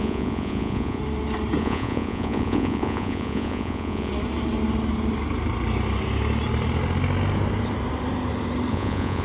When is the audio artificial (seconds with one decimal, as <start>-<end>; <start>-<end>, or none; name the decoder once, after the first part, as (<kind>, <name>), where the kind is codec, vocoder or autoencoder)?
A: 0.0-1.0 (vocoder, Vocos); 1.6-4.1; 8.7-9.2